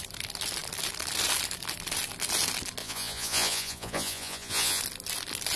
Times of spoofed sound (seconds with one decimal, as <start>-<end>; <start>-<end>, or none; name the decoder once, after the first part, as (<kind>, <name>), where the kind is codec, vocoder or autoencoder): 2.8-4.8 (vocoder, Vocos)